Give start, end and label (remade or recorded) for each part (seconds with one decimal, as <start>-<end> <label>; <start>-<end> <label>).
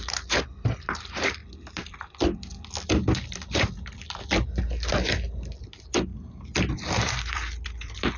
0.0-1.4 remade; 1.4-4.6 recorded; 4.6-6.1 remade; 6.1-6.7 recorded; 6.7-8.2 remade